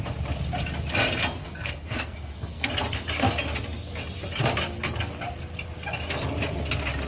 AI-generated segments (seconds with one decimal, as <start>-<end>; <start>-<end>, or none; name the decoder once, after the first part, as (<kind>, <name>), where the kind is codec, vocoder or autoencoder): 1.4-2.7 (codec, SNAC)